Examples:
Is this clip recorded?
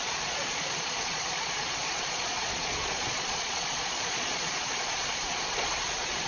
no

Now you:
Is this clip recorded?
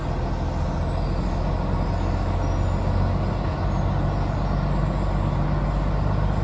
yes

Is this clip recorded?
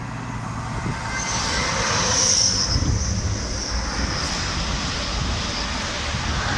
yes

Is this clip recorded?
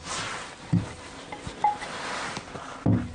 yes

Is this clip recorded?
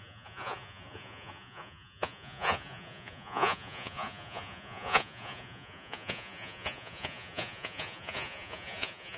no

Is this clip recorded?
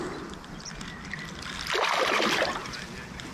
yes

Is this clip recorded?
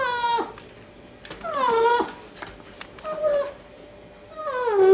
yes